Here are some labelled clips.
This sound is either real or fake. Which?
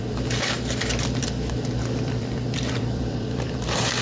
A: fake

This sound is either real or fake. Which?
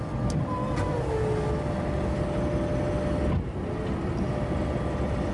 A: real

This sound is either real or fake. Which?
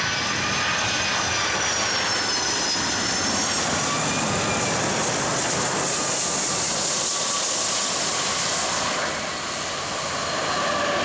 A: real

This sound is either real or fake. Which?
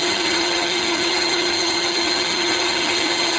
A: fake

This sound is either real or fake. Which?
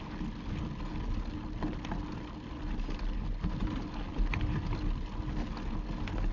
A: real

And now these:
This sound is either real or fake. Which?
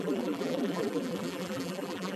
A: fake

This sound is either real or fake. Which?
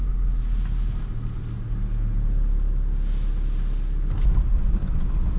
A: real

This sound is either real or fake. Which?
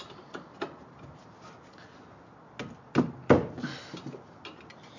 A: real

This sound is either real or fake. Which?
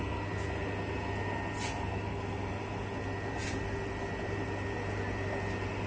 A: real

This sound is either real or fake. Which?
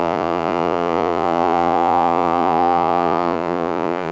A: fake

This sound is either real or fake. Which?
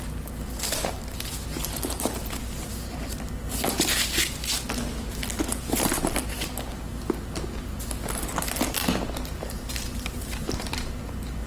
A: real